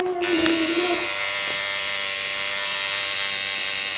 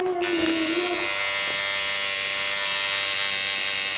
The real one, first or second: second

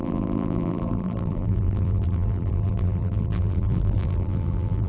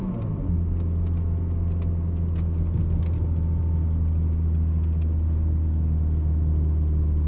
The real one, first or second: second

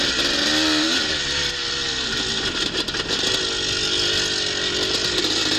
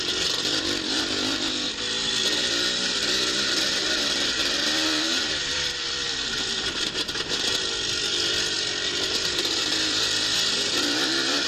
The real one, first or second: first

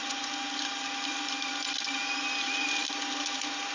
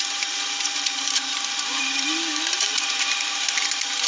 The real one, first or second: first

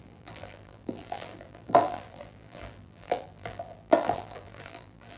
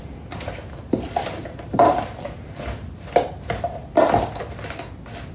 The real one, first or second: second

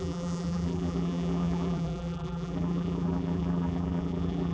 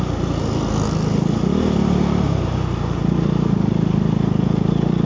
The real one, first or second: second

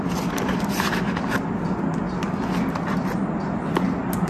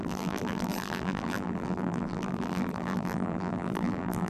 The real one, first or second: first